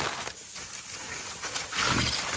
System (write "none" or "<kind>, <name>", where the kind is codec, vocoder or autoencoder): none